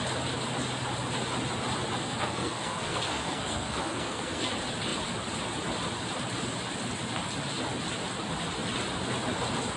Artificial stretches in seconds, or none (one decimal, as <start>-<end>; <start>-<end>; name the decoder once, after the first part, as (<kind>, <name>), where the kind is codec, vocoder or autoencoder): 2.0-4.5 (codec, SNAC)